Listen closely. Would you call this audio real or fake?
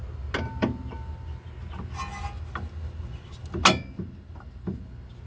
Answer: real